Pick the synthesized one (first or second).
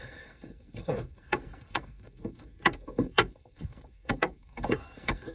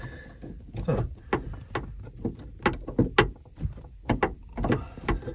first